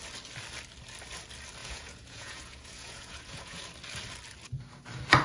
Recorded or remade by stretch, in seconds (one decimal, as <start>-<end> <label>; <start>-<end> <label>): 0.0-1.6 recorded; 1.6-3.6 remade; 3.6-5.2 recorded